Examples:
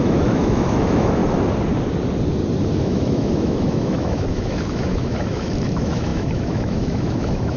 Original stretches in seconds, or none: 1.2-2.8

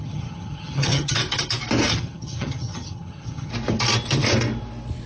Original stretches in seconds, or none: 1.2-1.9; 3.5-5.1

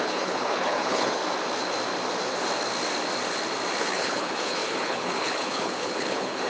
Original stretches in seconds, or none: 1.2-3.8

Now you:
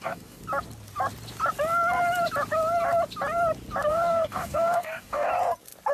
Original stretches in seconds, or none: 0.4-3.9; 5.3-5.9

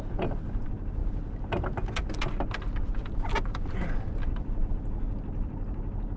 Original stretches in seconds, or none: 0.0-6.2